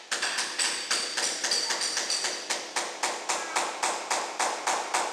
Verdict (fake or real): real